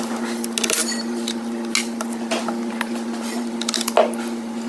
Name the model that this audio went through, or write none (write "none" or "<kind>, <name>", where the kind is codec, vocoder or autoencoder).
none